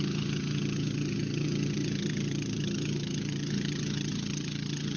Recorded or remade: remade